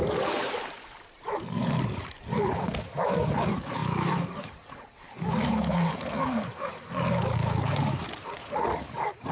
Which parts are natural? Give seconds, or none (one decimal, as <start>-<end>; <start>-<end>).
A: 0.0-9.3

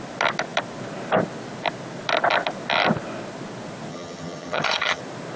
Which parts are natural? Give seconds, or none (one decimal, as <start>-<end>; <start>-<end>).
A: 0.0-3.9; 5.0-5.4